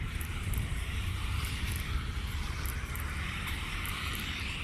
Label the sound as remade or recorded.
remade